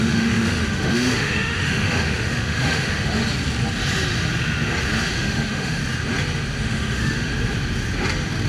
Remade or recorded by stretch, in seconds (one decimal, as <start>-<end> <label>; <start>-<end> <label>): 0.0-3.2 remade; 3.2-5.1 recorded; 5.1-5.8 remade; 5.8-6.6 recorded; 6.6-7.3 remade; 7.3-8.5 recorded